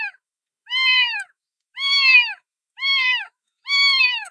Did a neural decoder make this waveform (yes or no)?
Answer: yes